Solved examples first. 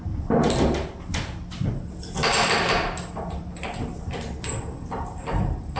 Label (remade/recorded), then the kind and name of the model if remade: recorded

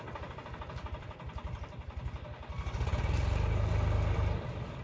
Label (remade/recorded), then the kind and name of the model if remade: remade, vocoder, BigVGAN v2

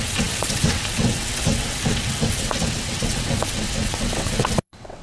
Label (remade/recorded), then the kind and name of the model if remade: remade, vocoder, WaveNeXt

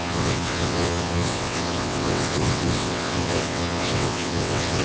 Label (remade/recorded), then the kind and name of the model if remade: remade, vocoder, WaveNeXt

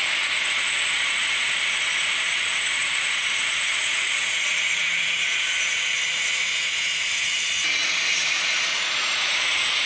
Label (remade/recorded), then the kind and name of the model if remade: remade, vocoder, Vocos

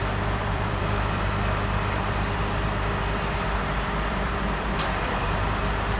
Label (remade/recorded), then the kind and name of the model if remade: remade, vocoder, BigVGAN v2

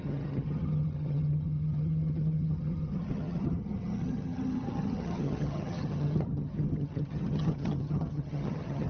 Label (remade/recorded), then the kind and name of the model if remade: remade, vocoder, HiFi-GAN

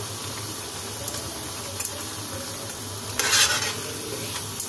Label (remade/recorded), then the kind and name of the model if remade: recorded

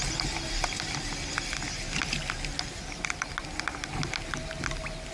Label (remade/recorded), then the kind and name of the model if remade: recorded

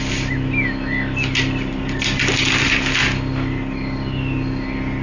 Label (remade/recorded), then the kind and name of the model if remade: recorded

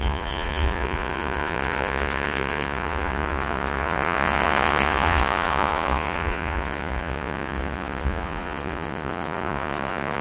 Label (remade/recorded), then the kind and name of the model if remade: remade, vocoder, Vocos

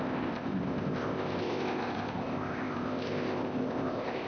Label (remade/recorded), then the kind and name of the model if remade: remade, codec, ZipCodec